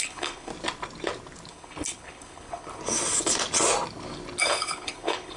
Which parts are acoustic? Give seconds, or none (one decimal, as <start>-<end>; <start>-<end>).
0.5-1.5; 2.8-4.4